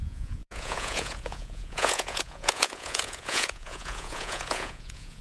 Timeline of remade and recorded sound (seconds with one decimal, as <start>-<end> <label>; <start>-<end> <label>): 0.0-5.2 remade